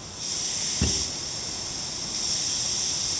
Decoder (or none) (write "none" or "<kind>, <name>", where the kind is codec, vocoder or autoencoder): none